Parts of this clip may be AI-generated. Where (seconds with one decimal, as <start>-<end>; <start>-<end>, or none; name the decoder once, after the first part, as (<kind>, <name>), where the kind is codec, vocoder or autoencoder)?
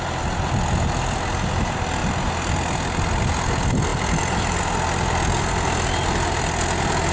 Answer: 3.9-4.6 (vocoder, BigVGAN v2)